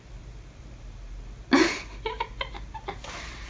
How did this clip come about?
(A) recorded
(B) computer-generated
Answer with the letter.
A